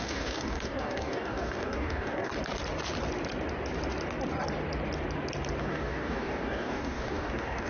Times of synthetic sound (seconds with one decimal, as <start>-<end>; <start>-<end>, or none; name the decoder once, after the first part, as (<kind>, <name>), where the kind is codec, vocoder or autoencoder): 0.0-2.3 (codec, DAC); 5.6-7.7